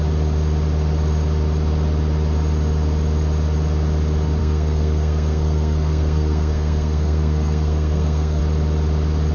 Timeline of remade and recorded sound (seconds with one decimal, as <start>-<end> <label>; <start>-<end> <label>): 0.0-4.4 recorded; 4.4-8.4 remade; 8.4-9.3 recorded